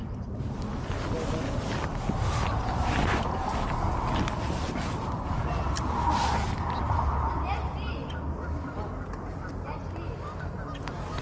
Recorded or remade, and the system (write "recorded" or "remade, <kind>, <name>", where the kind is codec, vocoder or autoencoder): recorded